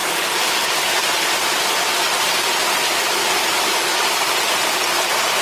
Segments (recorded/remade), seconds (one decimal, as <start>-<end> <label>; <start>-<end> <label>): 0.0-3.4 recorded; 3.4-4.2 remade; 4.2-5.4 recorded